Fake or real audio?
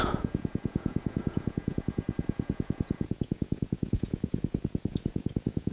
fake